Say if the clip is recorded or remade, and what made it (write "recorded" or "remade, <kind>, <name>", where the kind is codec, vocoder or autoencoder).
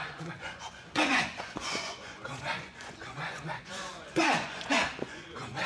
remade, vocoder, Vocos